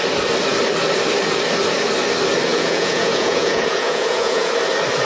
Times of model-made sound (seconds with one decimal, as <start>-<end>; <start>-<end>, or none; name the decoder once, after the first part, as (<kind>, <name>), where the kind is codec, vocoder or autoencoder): 2.5-4.5 (vocoder, Vocos)